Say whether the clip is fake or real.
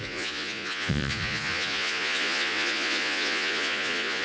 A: fake